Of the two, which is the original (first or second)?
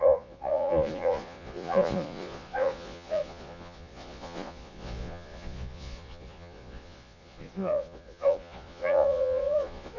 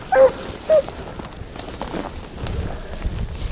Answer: second